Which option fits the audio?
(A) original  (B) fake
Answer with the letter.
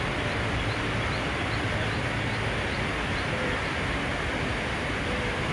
A